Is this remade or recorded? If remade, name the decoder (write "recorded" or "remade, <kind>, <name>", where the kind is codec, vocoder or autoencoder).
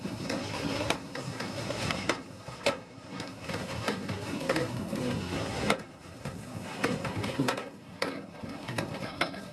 remade, codec, SNAC